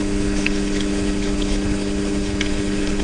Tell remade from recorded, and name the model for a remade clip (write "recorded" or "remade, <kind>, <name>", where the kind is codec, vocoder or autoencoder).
remade, codec, HILCodec